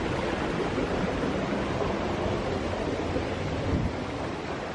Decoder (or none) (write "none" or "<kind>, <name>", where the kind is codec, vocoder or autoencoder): none